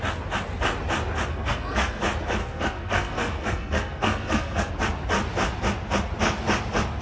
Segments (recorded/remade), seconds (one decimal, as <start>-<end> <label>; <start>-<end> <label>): 0.0-1.3 recorded; 1.3-2.0 remade; 2.0-2.4 recorded; 2.4-4.7 remade; 4.7-7.0 recorded